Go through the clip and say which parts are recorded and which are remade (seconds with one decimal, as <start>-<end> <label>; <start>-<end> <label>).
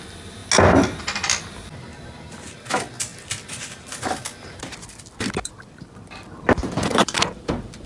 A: 0.0-0.4 remade; 0.4-1.0 recorded; 1.0-7.9 remade